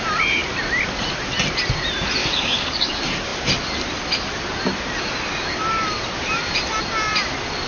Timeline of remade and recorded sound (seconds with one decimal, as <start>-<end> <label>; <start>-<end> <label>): 0.0-2.2 recorded; 2.2-2.9 remade; 2.9-7.7 recorded